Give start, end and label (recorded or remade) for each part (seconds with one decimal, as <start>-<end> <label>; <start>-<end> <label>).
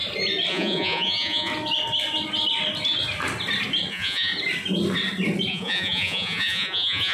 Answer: 0.0-0.5 recorded; 0.5-1.5 remade; 1.5-3.9 recorded; 3.9-4.3 remade; 4.3-5.5 recorded; 5.5-7.1 remade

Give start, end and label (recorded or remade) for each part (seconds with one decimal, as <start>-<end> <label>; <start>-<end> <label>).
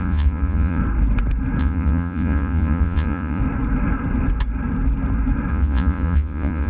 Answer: 0.0-0.8 remade; 0.8-1.6 recorded; 1.6-3.4 remade; 3.4-5.5 recorded; 5.5-6.7 remade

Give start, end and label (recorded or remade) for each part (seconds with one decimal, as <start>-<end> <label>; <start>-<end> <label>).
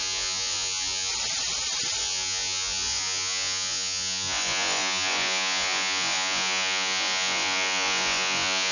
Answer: 0.0-1.1 remade; 1.1-2.0 recorded; 2.0-8.7 remade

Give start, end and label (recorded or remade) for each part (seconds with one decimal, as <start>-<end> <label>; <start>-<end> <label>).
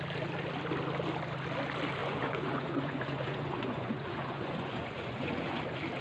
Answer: 0.0-2.0 recorded; 2.0-5.6 remade; 5.6-6.0 recorded